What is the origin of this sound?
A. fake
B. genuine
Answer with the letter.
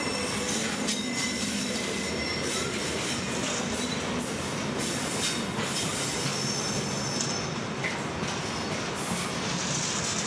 B